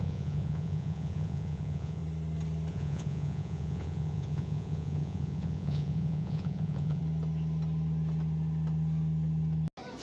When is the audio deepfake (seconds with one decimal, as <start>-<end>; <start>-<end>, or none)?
0.0-2.0; 2.7-7.0